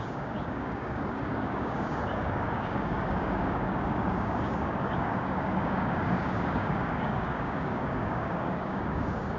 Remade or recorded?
remade